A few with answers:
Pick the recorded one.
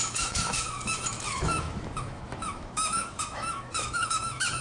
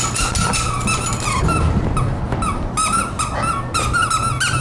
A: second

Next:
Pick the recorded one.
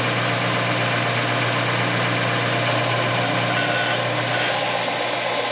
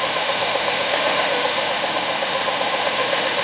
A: first